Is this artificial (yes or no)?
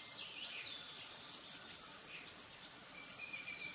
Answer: no